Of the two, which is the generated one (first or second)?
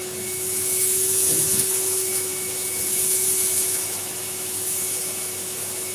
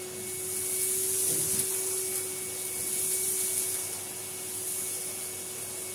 first